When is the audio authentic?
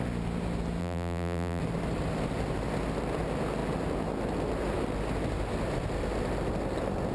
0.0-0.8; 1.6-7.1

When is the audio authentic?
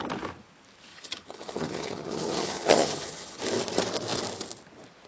0.0-0.9; 3.4-5.1